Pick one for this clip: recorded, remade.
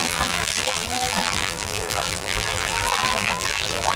remade